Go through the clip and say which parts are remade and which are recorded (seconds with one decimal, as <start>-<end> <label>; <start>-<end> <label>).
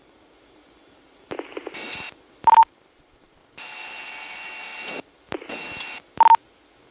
0.0-2.6 recorded; 2.6-3.8 remade; 3.8-6.9 recorded